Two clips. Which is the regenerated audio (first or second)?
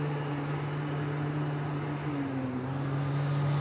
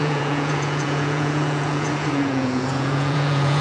second